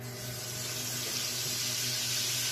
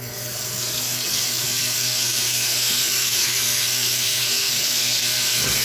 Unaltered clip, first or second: first